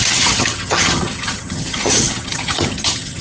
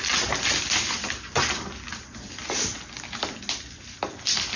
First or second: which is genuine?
second